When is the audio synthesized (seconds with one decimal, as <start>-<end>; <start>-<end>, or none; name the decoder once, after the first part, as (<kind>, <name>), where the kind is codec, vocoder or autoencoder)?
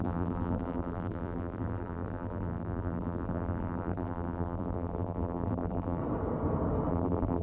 0.0-6.0 (vocoder, BigVGAN v2); 6.9-7.4